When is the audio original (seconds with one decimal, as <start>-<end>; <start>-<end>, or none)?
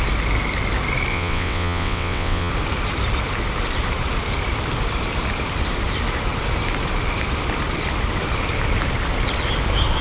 0.0-1.1; 2.5-10.0